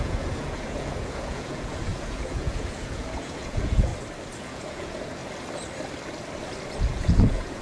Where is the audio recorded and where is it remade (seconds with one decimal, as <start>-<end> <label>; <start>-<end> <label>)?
0.0-3.9 remade; 3.9-4.4 recorded; 4.4-5.2 remade; 5.2-6.8 recorded; 6.8-7.6 remade